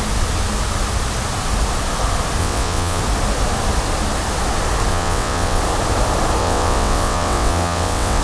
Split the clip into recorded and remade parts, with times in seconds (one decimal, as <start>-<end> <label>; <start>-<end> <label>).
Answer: 0.0-2.4 recorded; 2.4-3.0 remade; 3.0-4.9 recorded; 4.9-5.6 remade; 5.6-6.4 recorded; 6.4-8.2 remade